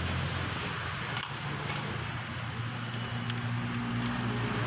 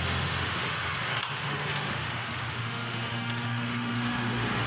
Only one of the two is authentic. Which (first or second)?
first